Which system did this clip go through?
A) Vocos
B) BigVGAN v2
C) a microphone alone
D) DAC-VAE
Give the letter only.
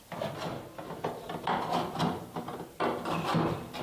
C